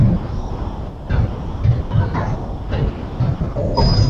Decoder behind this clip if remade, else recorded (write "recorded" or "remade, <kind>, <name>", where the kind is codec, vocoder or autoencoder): recorded